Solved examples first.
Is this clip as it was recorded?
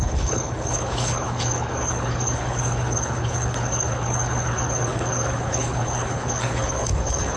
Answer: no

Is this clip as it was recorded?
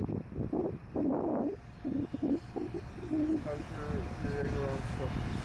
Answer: yes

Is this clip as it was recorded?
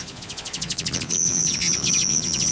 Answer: no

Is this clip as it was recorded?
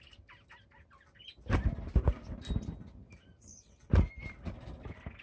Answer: yes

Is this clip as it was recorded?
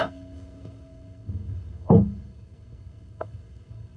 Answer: no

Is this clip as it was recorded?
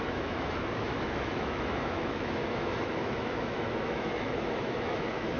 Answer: no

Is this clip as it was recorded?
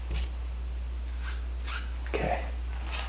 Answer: no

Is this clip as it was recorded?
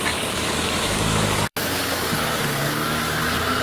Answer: no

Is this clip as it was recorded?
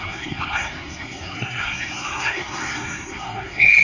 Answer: no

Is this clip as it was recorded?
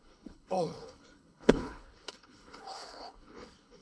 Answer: no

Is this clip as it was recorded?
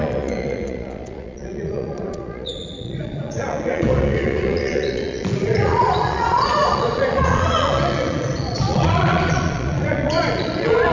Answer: no